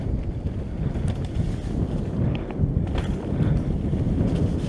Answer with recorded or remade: recorded